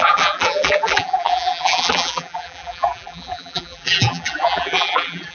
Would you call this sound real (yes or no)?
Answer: no